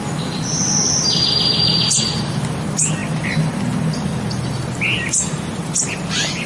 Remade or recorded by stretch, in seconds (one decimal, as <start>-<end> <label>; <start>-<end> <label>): 0.0-6.5 recorded